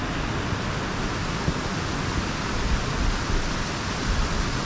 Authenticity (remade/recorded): recorded